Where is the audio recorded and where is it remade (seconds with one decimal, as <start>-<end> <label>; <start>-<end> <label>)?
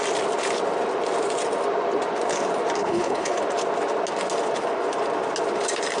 0.0-2.8 recorded; 2.8-3.4 remade; 3.4-6.0 recorded